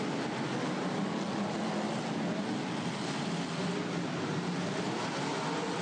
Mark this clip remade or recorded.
recorded